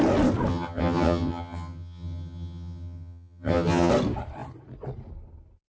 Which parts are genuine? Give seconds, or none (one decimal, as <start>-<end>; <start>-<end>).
0.0-0.5; 3.9-5.7